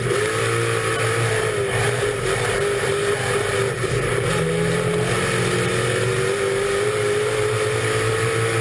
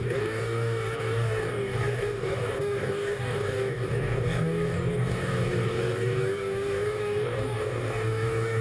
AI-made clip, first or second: second